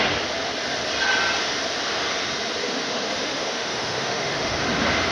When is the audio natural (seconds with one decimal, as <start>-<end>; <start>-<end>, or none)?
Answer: 0.0-2.6; 4.6-5.1